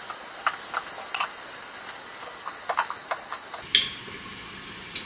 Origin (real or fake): real